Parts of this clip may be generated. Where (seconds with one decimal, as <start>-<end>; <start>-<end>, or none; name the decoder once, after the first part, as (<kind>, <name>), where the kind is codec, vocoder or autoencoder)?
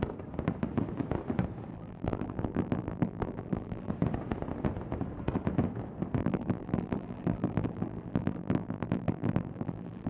1.7-3.9 (vocoder, BigVGAN v2); 6.2-10.1